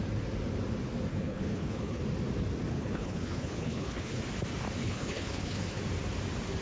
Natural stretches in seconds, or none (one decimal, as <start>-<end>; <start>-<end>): 0.0-1.1; 2.0-2.7; 4.2-4.8; 5.8-6.6